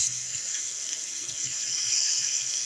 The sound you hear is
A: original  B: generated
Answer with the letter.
B